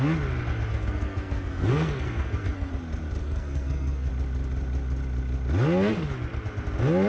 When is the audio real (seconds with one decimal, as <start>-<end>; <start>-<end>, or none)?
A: 0.0-0.7; 2.7-3.2; 4.1-7.1